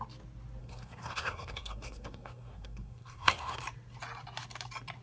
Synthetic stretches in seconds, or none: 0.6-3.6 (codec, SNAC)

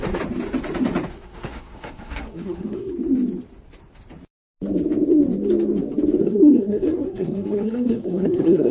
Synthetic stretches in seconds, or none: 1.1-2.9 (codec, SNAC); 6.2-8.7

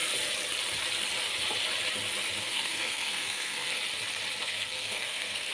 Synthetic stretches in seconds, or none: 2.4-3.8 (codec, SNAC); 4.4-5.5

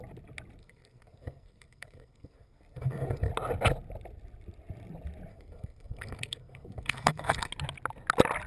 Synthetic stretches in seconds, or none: 0.6-3.3 (codec, SNAC); 5.3-7.5

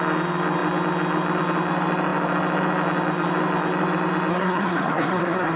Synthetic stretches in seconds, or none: 4.3-5.6 (codec, SNAC)